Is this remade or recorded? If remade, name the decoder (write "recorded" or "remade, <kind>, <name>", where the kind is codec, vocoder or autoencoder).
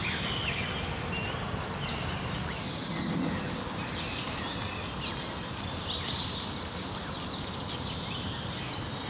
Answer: recorded